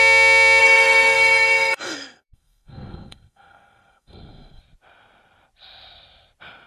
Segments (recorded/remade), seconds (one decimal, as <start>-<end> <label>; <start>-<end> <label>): 0.0-0.6 recorded; 0.6-4.6 remade; 4.6-6.7 recorded